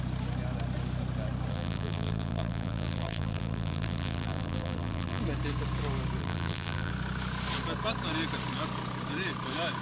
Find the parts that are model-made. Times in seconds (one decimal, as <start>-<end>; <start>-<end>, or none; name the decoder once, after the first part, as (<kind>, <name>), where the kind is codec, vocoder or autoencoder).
1.5-5.2 (vocoder, BigVGAN v2); 6.2-6.9